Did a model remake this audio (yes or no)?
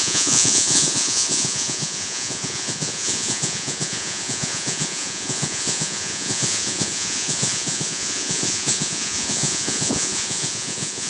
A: yes